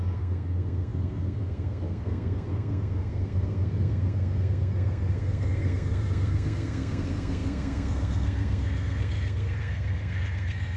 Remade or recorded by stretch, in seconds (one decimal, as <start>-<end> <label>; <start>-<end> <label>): 0.0-10.8 remade